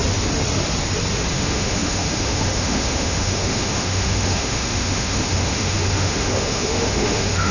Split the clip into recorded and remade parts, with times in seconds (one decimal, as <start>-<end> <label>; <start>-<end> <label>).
0.0-1.3 recorded; 1.3-7.5 remade